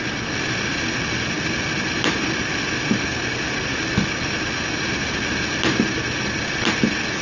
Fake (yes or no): no